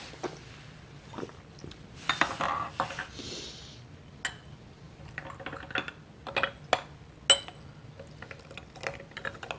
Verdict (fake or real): real